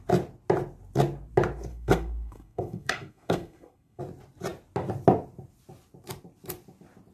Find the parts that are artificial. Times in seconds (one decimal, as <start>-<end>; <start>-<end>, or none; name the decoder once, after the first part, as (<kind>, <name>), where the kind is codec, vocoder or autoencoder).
1.7-4.0 (codec, SNAC)